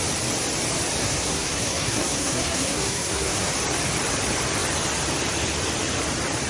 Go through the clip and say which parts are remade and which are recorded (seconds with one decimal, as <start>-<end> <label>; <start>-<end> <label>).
0.0-1.0 recorded; 1.0-3.5 remade; 3.5-6.5 recorded